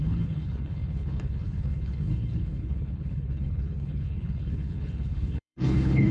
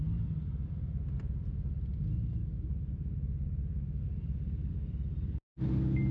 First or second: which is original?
second